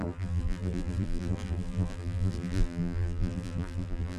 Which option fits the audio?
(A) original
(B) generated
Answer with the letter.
B